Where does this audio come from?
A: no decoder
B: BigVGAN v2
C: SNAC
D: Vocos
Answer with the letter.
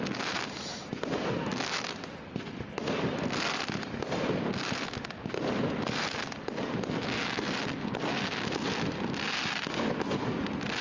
A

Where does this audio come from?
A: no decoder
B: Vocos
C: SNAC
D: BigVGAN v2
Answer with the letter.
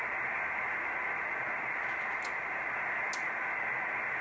A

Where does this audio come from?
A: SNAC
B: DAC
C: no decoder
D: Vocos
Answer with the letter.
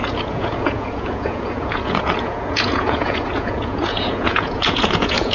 D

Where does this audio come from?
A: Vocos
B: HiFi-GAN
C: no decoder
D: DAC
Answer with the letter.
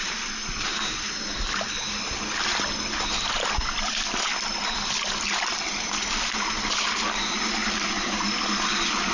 C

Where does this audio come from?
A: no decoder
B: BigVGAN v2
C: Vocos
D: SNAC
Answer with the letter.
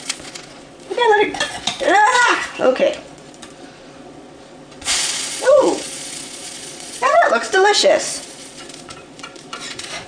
C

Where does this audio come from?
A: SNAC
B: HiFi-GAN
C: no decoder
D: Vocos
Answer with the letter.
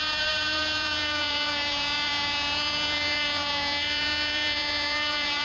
D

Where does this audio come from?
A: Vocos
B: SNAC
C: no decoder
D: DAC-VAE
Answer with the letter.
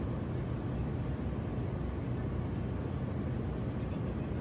C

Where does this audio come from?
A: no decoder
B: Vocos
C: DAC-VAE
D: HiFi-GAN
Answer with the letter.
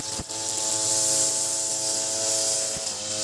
A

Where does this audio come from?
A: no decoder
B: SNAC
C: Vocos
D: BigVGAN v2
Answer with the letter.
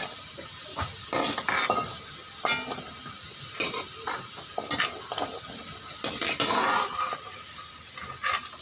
A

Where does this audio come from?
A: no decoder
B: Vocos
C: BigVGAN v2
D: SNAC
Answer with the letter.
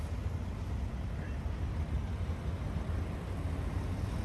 A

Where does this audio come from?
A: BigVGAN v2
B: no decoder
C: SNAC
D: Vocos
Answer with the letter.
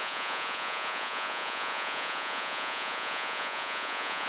D